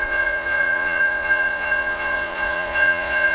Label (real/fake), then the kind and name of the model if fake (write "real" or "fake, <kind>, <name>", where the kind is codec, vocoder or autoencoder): fake, vocoder, Vocos